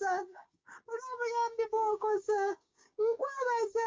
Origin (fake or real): fake